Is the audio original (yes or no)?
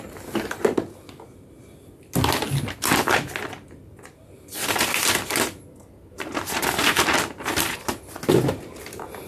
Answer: yes